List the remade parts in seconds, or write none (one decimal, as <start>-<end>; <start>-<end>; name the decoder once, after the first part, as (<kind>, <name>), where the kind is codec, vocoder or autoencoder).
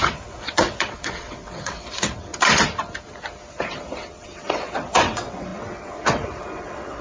0.0-2.3 (vocoder, WaveNeXt); 3.5-7.0